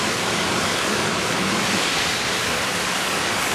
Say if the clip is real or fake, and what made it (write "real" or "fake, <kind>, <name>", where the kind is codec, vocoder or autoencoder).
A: fake, codec, DAC